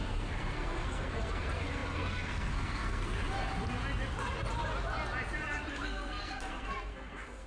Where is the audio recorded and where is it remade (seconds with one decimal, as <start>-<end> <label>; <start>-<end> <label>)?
0.0-3.2 remade; 3.2-5.7 recorded; 5.7-7.5 remade